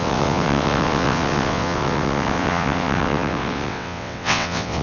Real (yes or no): no